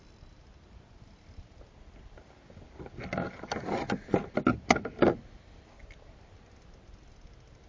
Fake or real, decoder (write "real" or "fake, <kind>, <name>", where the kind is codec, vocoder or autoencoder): real